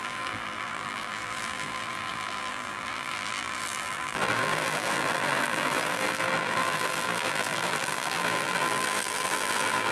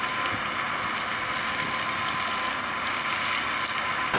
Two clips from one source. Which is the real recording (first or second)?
second